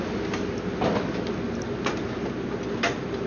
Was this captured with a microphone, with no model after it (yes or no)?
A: yes